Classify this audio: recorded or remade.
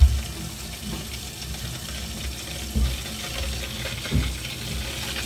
recorded